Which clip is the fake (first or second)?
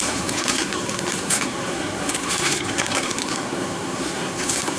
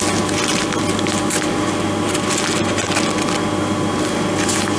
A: first